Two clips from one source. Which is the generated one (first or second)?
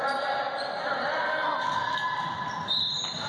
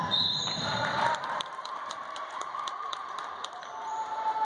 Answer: second